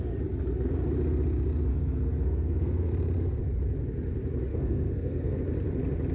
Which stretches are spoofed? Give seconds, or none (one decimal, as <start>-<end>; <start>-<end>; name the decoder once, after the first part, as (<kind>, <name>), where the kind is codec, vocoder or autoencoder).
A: 1.7-2.9 (codec, SNAC); 4.5-5.4